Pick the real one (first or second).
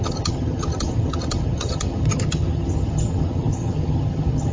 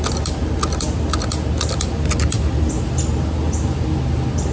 second